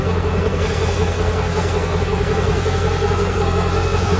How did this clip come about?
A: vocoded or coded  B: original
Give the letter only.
A